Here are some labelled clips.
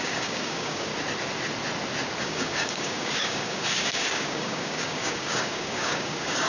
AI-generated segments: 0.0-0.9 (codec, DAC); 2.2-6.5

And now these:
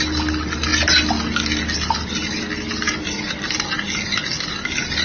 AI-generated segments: none

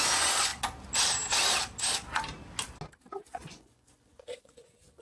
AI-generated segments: 0.0-0.5 (vocoder, Vocos); 3.1-5.0

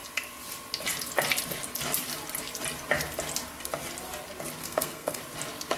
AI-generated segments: 4.6-5.2 (codec, SNAC)

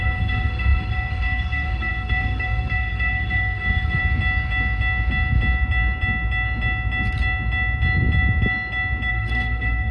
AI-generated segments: 0.0-4.0 (codec, SNAC); 9.1-9.9